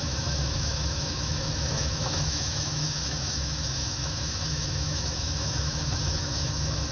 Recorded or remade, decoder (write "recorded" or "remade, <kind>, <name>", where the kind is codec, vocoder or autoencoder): remade, autoencoder, DAC-VAE